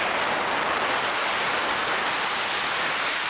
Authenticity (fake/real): real